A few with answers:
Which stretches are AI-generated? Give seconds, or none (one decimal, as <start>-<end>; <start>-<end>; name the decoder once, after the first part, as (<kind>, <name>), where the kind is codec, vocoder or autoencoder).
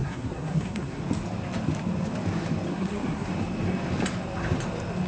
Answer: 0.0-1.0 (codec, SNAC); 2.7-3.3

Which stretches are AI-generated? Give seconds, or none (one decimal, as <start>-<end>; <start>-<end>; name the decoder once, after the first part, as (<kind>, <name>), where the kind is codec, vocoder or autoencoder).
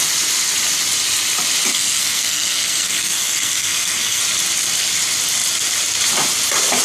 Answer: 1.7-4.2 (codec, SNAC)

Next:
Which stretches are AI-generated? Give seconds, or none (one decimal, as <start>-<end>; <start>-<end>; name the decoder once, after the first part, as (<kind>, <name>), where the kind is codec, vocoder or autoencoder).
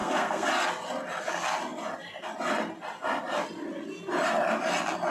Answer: 0.0-0.5 (codec, SNAC)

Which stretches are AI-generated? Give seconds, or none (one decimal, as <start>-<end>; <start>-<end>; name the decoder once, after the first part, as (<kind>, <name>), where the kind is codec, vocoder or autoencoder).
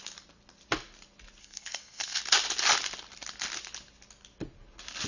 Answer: 1.4-2.2 (codec, SNAC)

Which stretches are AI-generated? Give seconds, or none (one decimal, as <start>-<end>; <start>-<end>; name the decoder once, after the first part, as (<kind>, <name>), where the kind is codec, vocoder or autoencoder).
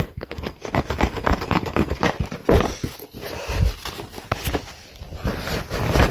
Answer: 0.0-2.0 (codec, SNAC)